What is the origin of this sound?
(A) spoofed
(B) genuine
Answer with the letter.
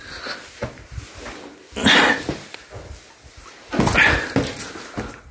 B